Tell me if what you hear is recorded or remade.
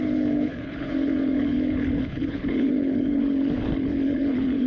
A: remade